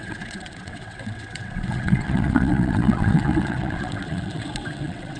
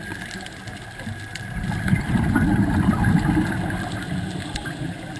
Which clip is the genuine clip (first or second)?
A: second